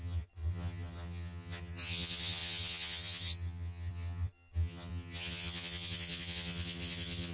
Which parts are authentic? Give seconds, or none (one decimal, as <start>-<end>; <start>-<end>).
none